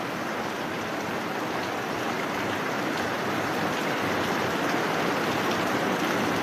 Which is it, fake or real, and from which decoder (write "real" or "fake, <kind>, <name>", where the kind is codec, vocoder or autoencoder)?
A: real